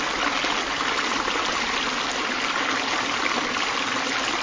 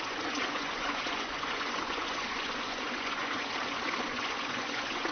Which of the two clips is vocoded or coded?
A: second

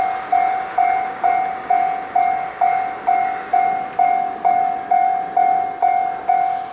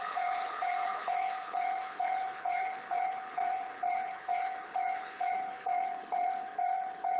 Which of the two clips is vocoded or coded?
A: second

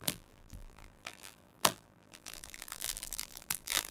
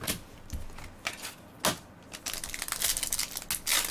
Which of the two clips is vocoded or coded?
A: first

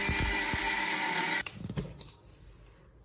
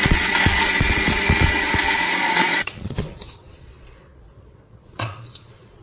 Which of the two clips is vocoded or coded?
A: second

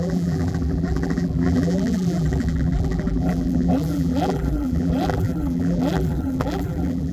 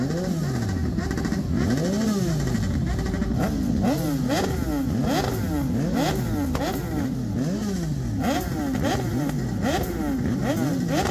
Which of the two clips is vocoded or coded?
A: first